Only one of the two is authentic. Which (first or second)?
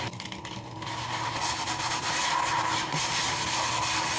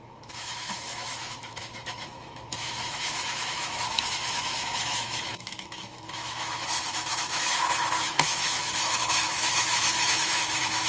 first